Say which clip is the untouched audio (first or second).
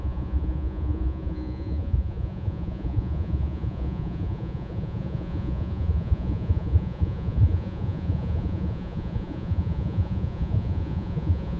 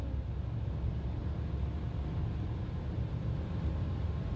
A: second